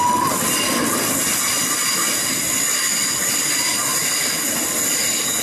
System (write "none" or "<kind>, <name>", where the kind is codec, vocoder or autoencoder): none